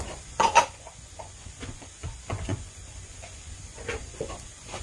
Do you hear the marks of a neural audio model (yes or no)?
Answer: yes